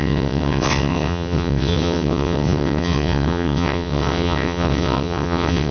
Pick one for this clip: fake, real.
fake